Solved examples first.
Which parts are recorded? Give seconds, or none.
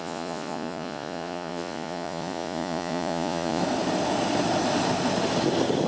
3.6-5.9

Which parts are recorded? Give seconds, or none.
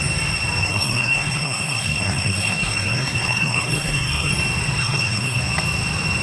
0.0-0.6; 4.3-4.8; 5.4-6.2